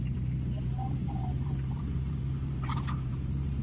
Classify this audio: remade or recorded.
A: remade